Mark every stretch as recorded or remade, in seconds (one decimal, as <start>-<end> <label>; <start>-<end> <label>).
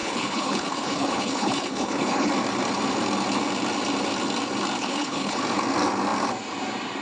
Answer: 0.0-2.3 remade; 2.3-4.8 recorded; 4.8-5.4 remade; 5.4-7.0 recorded